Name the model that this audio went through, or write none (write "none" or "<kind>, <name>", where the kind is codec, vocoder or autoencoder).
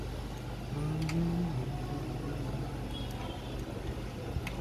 none